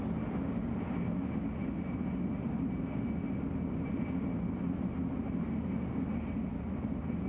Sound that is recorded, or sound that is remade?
recorded